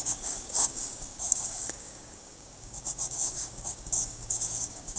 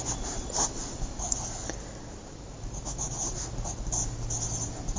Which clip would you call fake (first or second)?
first